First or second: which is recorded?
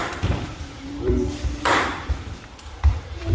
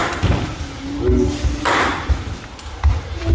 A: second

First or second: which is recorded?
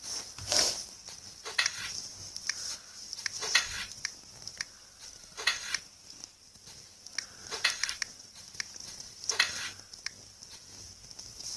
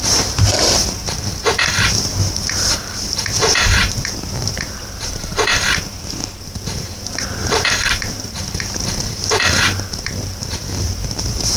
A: first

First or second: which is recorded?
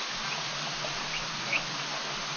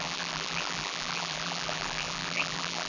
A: first